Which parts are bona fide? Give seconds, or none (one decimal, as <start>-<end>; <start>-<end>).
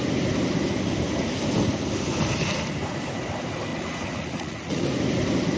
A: 0.0-3.7; 4.8-5.6